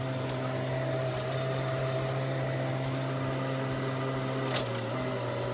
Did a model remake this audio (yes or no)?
no